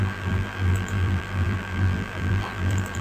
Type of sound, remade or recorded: remade